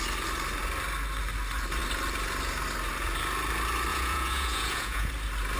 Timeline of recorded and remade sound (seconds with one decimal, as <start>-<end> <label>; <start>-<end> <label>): 0.0-3.9 recorded; 3.9-5.1 remade; 5.1-5.6 recorded